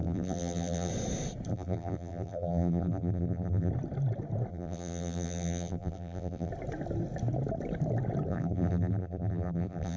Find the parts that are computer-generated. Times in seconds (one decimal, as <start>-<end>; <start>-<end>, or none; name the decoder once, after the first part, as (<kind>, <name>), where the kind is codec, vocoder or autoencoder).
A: 0.0-0.9 (vocoder, BigVGAN v2); 1.5-3.7; 4.5-6.5; 8.3-10.0